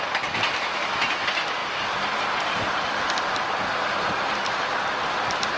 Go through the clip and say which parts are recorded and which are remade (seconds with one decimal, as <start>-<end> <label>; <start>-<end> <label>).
0.0-5.6 recorded